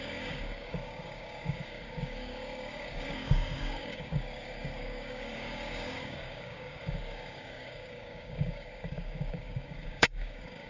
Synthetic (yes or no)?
yes